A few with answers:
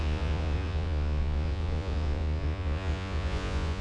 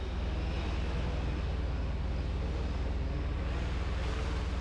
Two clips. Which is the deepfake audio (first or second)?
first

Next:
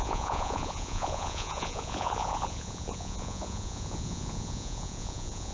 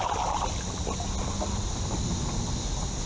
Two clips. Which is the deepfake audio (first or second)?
first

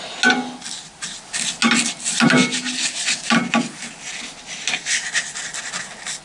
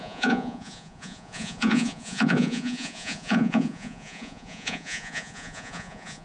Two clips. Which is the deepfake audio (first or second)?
second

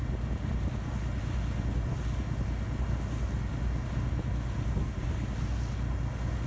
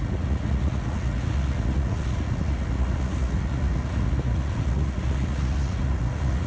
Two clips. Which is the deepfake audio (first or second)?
second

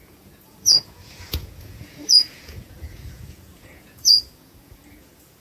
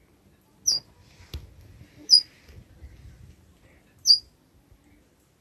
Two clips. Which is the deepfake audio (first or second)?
first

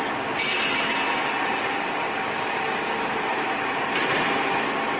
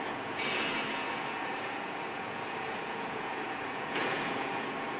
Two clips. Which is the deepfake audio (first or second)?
second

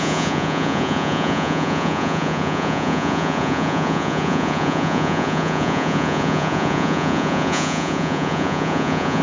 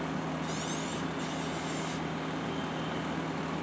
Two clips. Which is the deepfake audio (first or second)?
first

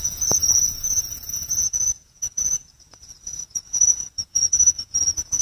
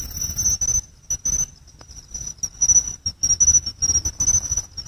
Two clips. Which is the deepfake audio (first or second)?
first